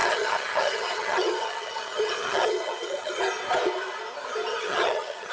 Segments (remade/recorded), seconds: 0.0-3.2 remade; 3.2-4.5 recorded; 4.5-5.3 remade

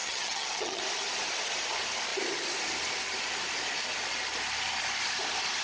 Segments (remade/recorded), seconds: 0.0-0.8 remade; 0.8-5.6 recorded

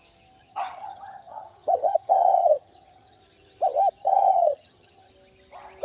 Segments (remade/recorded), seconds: 0.0-0.4 recorded; 0.4-3.2 remade; 3.2-4.0 recorded; 4.0-5.1 remade; 5.1-5.8 recorded

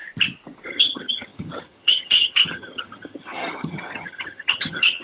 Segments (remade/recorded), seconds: 0.0-0.7 recorded; 0.7-5.0 remade

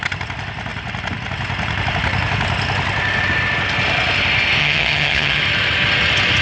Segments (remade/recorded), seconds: 0.0-4.6 recorded; 4.6-5.4 remade; 5.4-6.4 recorded

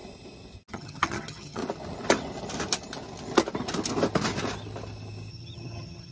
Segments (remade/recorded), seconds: 0.0-0.7 recorded; 0.7-1.6 remade; 1.6-5.3 recorded; 5.3-6.1 remade